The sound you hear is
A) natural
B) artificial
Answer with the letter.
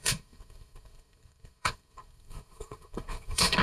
B